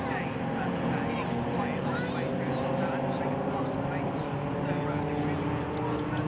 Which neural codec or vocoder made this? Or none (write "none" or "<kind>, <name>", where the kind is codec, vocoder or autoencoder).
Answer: none